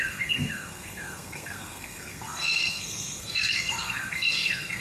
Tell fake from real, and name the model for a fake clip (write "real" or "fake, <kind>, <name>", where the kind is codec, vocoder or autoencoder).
fake, codec, SNAC